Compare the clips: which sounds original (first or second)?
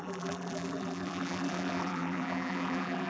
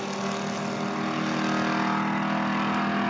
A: second